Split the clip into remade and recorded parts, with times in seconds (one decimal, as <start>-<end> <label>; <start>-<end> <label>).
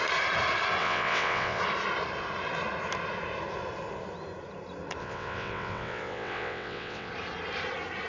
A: 0.0-0.8 recorded; 0.8-1.6 remade; 1.6-5.0 recorded; 5.0-7.1 remade; 7.1-8.1 recorded